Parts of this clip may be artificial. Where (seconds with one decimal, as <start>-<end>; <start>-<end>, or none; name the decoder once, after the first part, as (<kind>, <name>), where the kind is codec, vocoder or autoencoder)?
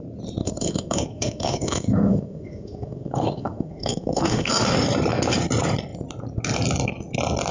0.4-4.5 (autoencoder, DAC-VAE)